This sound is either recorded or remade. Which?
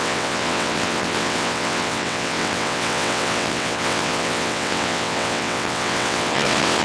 remade